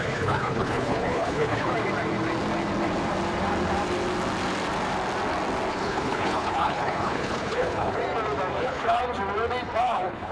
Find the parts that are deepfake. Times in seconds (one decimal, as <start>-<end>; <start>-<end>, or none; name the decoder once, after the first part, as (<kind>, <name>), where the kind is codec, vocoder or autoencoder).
0.0-1.7 (codec, HILCodec); 5.7-8.0; 8.6-9.0; 9.8-10.3

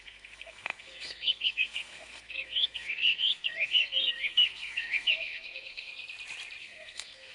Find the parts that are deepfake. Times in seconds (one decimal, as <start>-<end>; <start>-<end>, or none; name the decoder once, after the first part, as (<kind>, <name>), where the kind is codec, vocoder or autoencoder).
0.0-5.9 (codec, SNAC); 6.6-7.3